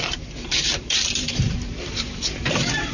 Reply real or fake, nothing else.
fake